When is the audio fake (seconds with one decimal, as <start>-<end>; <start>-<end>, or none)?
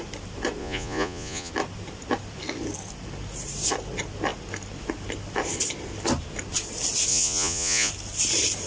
0.6-1.5; 7.1-7.9